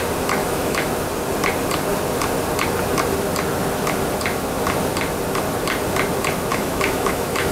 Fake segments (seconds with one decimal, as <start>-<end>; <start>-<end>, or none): 0.4-0.9; 6.5-7.5